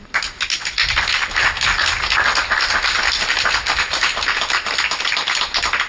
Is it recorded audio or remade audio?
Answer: recorded